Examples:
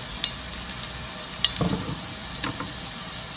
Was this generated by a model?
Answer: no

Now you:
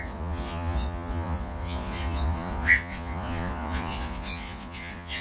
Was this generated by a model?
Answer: yes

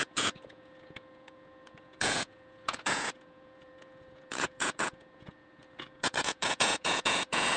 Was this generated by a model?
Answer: yes